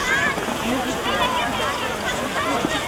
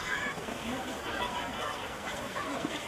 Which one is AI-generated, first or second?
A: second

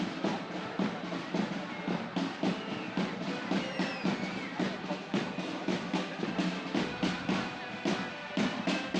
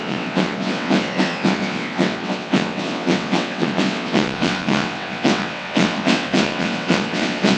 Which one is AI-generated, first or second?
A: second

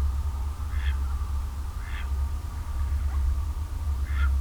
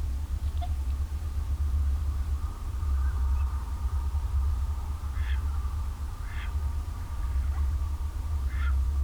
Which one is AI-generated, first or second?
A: second